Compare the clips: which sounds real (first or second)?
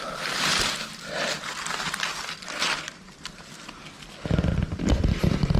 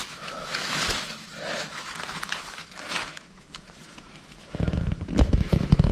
first